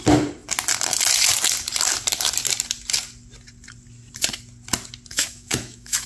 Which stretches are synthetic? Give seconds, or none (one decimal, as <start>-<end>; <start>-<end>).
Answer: 5.1-6.1